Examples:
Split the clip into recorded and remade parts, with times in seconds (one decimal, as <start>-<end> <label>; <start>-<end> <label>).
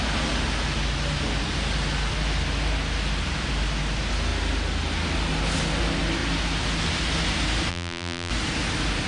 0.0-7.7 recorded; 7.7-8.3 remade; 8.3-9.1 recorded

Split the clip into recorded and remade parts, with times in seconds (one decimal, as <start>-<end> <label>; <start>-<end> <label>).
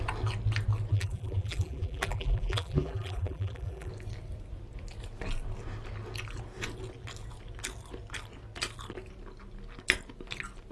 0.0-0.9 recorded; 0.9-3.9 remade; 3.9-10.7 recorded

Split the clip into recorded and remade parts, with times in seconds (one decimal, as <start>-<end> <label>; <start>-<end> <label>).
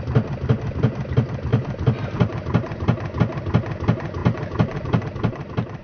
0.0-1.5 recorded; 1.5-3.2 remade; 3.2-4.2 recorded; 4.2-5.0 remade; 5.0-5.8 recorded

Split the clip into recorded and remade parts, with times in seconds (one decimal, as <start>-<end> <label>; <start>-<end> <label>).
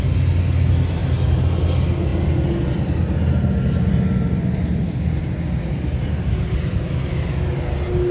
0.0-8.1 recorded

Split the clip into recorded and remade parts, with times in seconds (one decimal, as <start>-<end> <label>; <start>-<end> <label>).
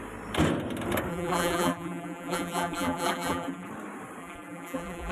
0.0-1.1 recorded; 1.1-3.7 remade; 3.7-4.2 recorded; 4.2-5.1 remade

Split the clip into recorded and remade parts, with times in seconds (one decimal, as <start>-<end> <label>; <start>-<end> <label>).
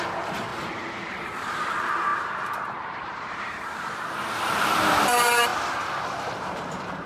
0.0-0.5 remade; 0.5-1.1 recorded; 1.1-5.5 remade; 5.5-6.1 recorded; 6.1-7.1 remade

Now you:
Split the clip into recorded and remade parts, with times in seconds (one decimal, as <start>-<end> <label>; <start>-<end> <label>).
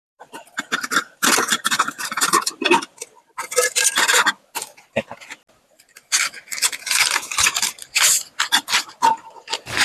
0.0-4.2 remade; 4.2-9.8 recorded